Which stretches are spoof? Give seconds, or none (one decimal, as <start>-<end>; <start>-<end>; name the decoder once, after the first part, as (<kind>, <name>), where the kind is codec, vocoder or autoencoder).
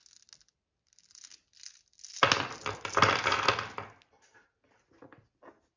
none